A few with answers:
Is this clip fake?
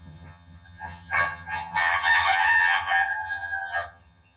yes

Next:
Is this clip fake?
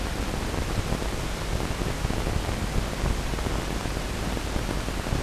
no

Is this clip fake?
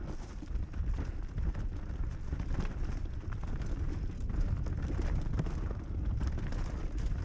no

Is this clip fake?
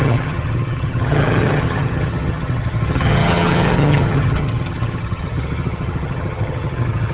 yes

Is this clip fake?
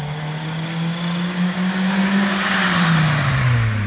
no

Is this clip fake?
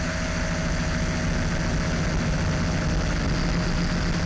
no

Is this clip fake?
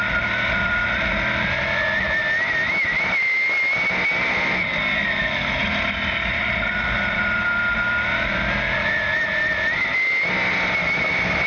no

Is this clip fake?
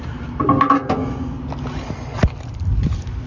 no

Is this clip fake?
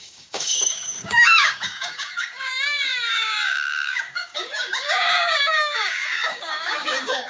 yes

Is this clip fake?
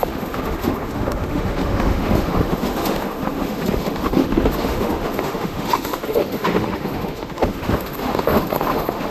yes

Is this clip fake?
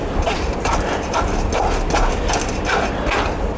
no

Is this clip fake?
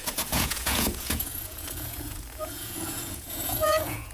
yes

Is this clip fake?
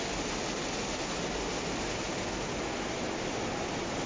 no